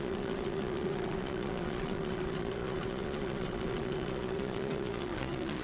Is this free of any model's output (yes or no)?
no